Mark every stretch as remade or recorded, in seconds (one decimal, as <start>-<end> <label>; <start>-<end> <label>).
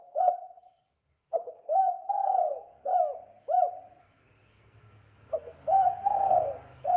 0.0-2.9 remade; 2.9-4.0 recorded; 4.0-7.0 remade